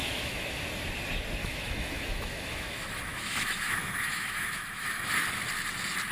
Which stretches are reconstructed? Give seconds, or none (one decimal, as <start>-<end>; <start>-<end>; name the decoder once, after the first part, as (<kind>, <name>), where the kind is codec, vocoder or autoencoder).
0.0-0.6 (autoencoder, DAC-VAE); 1.4-5.1